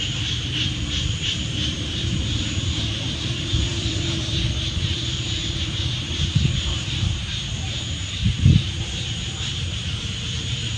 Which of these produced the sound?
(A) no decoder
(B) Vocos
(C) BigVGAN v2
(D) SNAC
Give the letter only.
C